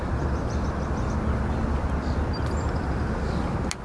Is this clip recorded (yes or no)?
yes